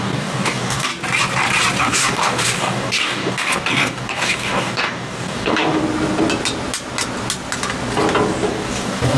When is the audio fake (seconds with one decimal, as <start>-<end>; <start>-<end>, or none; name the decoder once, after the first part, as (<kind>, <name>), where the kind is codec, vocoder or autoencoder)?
0.0-0.9 (codec, DAC); 1.8-5.8; 8.5-9.2